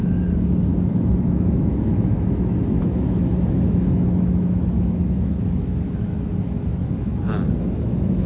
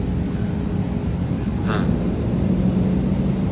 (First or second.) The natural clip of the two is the second